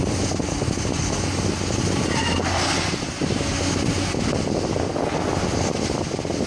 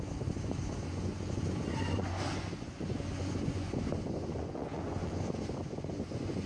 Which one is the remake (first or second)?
second